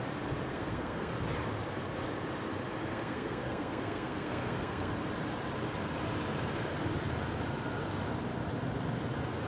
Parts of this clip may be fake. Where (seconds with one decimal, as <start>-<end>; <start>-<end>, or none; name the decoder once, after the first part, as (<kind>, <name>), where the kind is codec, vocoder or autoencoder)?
0.5-1.1 (codec, SNAC); 2.8-4.9